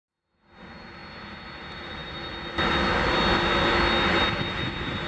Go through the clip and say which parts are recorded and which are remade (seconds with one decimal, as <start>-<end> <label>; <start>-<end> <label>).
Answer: 0.0-5.1 recorded